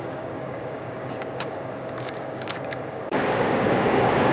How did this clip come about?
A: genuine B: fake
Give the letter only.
B